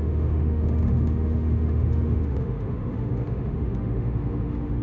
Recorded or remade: remade